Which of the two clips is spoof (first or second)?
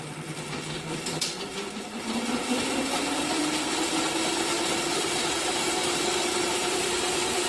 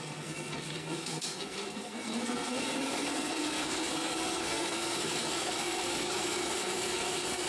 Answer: second